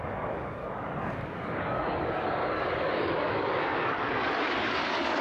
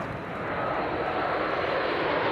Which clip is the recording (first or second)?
second